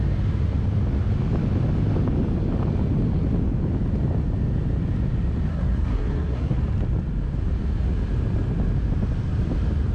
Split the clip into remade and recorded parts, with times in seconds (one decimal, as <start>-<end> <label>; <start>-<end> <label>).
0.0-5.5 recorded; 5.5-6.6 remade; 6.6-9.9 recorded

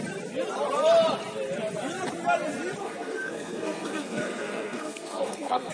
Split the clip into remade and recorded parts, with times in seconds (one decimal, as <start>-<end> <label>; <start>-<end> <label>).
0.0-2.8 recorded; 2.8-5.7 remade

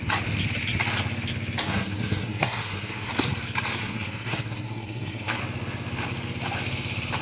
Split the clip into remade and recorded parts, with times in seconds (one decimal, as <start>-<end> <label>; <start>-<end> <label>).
0.0-1.6 recorded; 1.6-3.1 remade; 3.1-3.8 recorded; 3.8-5.4 remade; 5.4-7.2 recorded